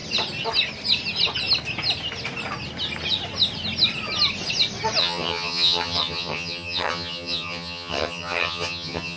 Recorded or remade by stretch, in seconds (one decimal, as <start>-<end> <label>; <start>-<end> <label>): 0.0-5.0 recorded; 5.0-9.2 remade